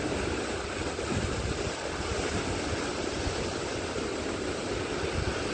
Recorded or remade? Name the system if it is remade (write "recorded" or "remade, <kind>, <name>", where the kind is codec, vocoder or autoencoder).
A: recorded